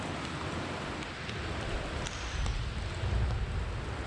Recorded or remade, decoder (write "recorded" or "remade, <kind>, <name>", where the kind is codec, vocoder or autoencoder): recorded